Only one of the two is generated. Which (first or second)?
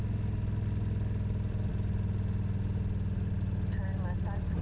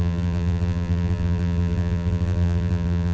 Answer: second